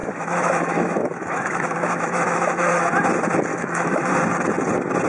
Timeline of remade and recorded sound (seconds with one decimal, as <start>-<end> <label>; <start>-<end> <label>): 0.0-2.8 remade; 2.8-3.5 recorded; 3.5-4.1 remade; 4.1-5.1 recorded